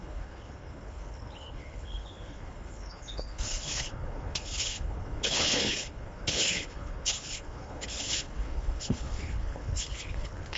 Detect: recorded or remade remade